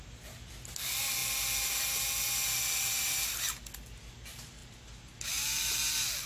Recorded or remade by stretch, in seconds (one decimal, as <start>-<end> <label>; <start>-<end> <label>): 0.0-6.3 recorded